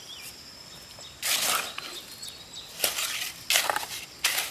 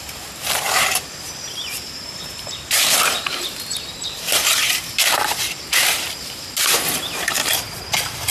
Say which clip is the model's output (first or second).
second